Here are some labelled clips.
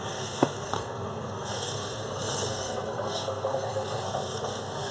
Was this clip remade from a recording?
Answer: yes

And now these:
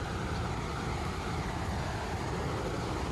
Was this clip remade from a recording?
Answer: no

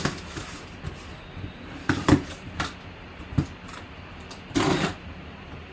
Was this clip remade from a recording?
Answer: no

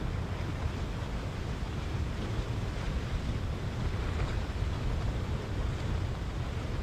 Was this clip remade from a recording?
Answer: no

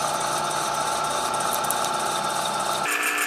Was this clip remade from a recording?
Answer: no